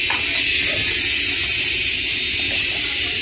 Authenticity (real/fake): real